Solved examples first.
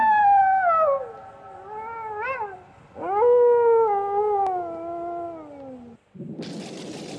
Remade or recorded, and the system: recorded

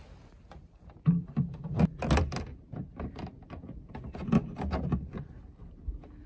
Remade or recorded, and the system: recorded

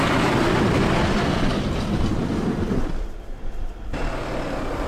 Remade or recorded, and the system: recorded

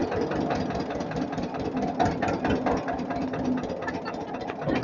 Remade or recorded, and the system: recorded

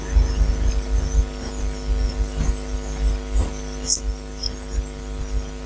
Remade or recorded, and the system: recorded